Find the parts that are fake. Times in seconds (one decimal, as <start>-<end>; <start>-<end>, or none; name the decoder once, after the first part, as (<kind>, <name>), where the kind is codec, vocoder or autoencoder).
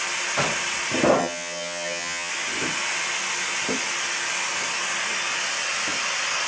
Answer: 1.2-2.3 (vocoder, HiFi-GAN)